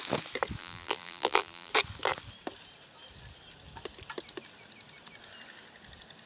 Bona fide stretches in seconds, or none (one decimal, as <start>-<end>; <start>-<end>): 0.0-0.6; 1.7-6.3